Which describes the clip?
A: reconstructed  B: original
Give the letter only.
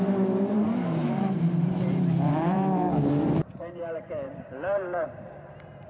A